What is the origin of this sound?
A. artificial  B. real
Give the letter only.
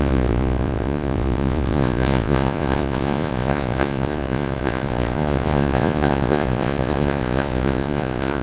A